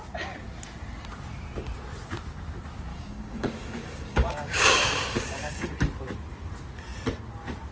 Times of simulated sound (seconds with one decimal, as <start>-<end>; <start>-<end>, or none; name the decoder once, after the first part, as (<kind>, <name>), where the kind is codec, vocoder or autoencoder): 2.9-5.7 (codec, DAC)